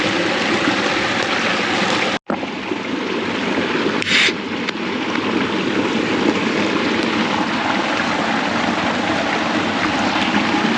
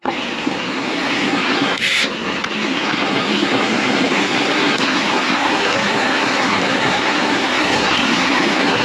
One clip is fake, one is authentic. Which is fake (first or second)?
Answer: second